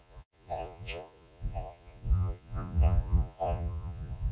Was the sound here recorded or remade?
remade